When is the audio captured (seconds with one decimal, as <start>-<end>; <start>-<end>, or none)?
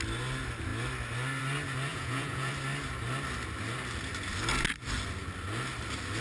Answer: 0.0-1.9; 2.5-6.2